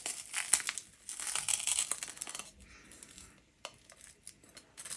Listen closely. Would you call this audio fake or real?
real